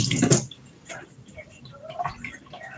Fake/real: real